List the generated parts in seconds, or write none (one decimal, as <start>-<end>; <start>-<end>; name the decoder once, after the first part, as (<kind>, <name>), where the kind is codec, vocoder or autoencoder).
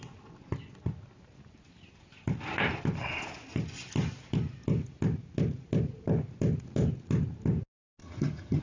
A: 8.0-8.6 (vocoder, HiFi-GAN)